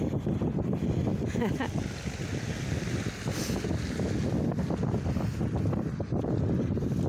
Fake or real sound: real